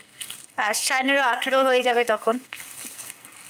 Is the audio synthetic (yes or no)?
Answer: yes